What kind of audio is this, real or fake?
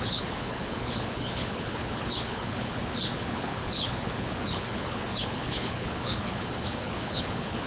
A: fake